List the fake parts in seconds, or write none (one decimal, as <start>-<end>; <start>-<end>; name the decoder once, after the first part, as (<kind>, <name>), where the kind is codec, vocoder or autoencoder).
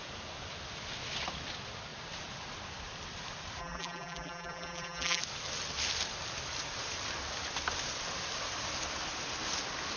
3.6-5.2 (vocoder, BigVGAN v2)